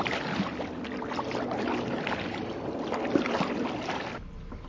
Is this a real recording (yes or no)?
yes